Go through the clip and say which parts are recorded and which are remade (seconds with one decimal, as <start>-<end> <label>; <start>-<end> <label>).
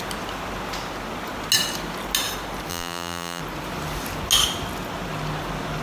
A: 0.0-2.7 recorded; 2.7-3.4 remade; 3.4-5.8 recorded